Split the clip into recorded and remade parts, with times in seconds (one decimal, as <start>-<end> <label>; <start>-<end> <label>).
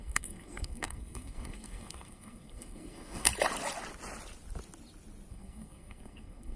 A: 0.0-3.3 remade; 3.3-5.3 recorded; 5.3-6.6 remade